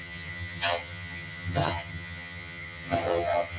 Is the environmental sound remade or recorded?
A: remade